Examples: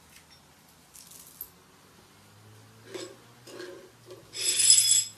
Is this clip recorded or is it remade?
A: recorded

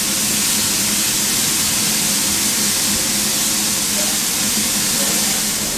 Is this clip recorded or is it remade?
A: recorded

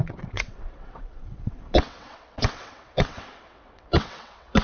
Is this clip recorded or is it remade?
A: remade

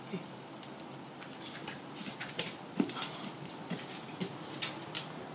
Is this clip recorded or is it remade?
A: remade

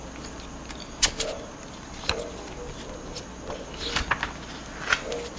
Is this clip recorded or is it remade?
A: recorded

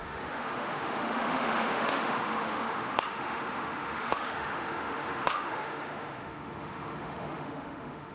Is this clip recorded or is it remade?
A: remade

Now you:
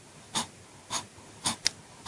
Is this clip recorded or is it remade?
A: remade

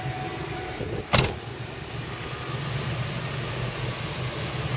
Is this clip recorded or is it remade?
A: recorded